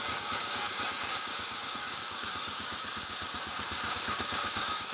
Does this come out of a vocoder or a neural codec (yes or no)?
yes